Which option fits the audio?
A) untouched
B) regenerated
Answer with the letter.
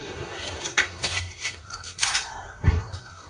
B